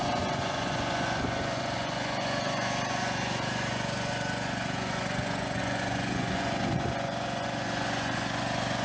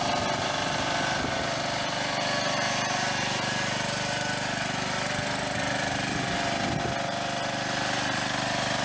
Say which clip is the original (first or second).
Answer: second